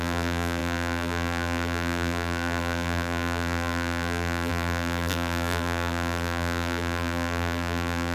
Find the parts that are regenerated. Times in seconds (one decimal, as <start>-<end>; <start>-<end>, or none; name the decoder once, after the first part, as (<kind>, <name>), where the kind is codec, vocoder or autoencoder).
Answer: 0.0-8.1 (vocoder, BigVGAN v2)